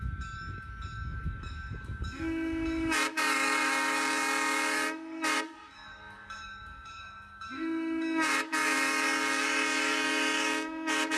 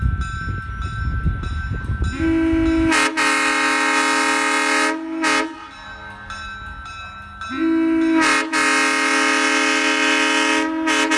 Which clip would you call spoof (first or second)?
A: first